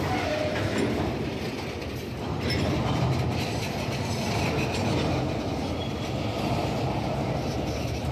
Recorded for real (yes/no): yes